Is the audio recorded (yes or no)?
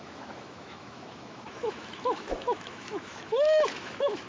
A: no